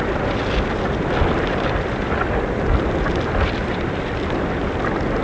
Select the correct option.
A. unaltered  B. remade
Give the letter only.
A